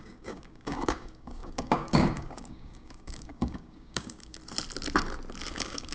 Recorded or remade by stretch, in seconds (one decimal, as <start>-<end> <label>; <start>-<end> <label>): 0.0-4.4 remade; 4.4-5.5 recorded; 5.5-5.9 remade